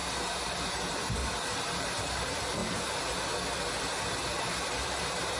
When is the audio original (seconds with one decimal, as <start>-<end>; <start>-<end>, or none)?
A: 0.0-0.5; 1.2-1.8; 2.6-4.4